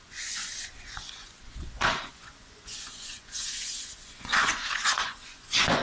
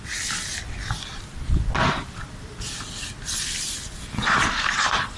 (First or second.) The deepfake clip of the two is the first